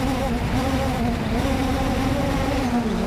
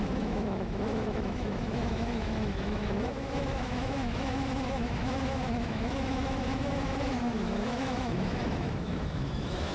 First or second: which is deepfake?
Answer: second